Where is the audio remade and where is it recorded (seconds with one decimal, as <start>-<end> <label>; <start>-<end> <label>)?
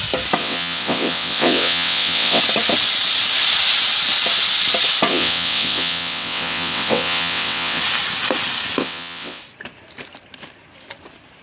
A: 0.0-0.4 recorded; 0.4-2.4 remade; 2.4-5.1 recorded; 5.1-7.8 remade; 7.8-8.8 recorded; 8.8-9.4 remade; 9.4-11.4 recorded